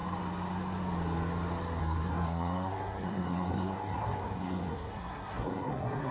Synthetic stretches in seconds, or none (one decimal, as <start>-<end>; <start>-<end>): 1.8-6.1